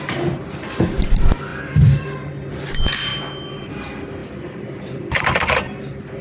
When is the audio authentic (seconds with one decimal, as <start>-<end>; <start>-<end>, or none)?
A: 0.0-1.5; 2.3-4.2; 5.2-6.2